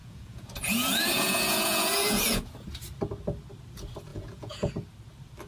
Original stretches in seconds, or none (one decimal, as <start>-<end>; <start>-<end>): 2.5-4.1; 4.7-5.5